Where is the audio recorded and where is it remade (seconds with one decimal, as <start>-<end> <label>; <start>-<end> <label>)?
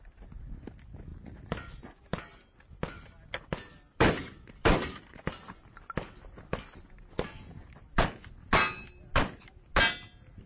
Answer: 0.0-10.5 recorded